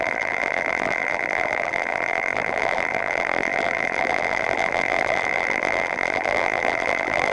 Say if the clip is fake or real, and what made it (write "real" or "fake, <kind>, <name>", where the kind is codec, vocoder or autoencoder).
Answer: fake, vocoder, BigVGAN v2